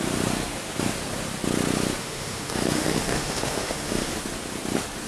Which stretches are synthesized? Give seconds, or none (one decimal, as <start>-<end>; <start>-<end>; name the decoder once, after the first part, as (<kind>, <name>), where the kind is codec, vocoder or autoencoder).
2.0-4.1 (autoencoder, DAC-VAE)